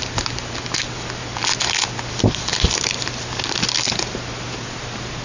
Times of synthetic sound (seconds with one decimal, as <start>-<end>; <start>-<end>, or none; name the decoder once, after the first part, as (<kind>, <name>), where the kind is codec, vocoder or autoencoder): none